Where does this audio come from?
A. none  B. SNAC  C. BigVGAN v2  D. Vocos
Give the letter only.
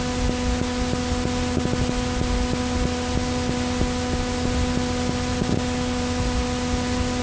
A